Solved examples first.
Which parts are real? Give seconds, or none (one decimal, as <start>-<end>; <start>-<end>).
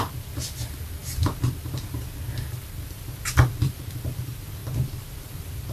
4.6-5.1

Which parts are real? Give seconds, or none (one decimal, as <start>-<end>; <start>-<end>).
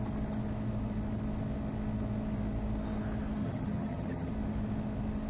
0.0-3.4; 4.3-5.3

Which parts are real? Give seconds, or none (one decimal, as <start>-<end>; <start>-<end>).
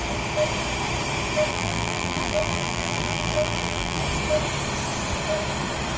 0.0-1.5; 4.0-6.0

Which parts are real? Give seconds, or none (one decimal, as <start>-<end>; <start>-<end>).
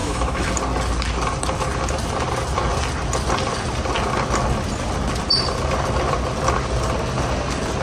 0.5-7.8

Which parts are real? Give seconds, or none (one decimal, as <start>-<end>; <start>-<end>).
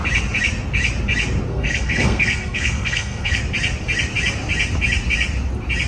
0.0-1.5; 3.4-5.9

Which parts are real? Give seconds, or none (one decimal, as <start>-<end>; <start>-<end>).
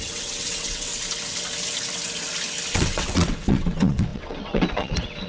0.9-2.7